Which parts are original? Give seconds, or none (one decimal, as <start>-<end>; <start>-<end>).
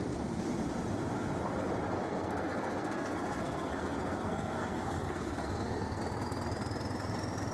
0.0-2.0; 6.0-7.5